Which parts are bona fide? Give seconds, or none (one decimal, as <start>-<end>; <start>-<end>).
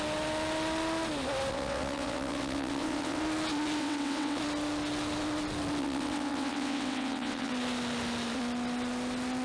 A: 0.0-1.5; 3.2-3.8; 4.4-5.8; 7.5-9.4